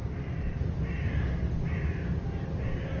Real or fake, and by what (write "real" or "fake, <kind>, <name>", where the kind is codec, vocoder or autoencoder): real